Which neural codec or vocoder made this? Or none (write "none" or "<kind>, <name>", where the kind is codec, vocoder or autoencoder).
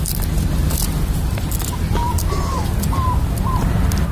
none